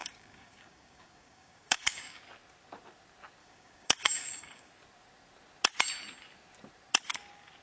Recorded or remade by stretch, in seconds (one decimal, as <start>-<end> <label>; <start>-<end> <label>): 0.0-2.2 remade; 2.2-3.4 recorded; 3.4-4.7 remade; 4.7-7.6 recorded